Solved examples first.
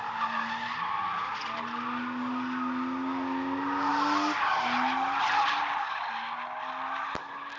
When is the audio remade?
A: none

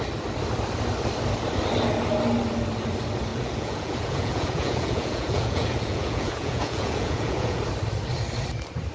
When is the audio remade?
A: 3.3-7.6

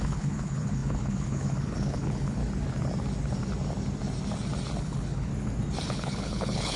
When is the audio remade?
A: 0.0-2.4; 4.8-5.3; 5.9-6.8

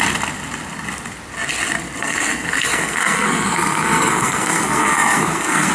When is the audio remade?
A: 2.0-5.7

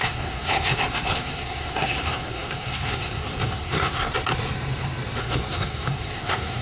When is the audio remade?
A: 0.0-4.1; 5.2-6.6

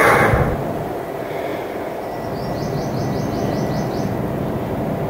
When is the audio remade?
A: none